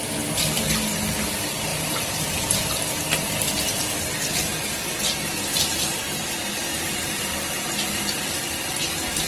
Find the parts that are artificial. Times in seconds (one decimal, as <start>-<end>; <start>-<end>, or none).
1.7-2.2; 5.9-9.3